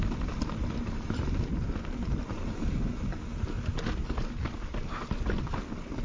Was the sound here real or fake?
real